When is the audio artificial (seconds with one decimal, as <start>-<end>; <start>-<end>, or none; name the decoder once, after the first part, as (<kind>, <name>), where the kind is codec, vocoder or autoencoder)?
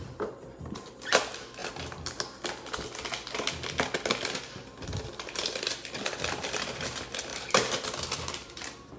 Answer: 0.0-1.6 (vocoder, BigVGAN v2); 5.0-7.3; 8.3-9.0